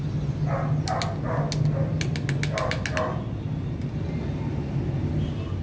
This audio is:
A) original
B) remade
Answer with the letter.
A